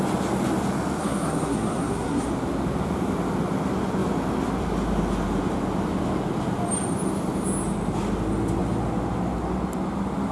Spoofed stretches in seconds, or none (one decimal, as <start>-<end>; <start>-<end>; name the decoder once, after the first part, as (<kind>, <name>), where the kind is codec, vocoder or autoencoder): 1.0-2.3 (codec, SNAC)